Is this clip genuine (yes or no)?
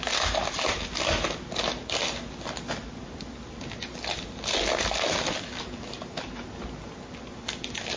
yes